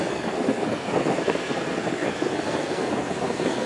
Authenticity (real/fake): fake